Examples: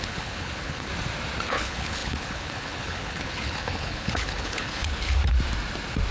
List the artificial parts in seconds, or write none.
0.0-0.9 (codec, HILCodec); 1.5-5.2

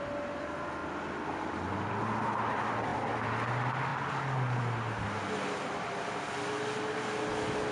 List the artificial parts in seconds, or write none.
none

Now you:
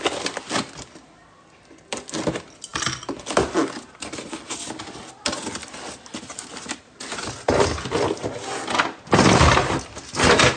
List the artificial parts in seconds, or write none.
none